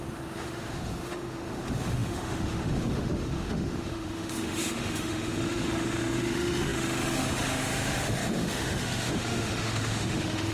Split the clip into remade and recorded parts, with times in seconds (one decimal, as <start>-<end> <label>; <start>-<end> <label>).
0.0-10.5 remade